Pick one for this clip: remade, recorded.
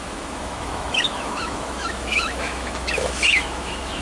remade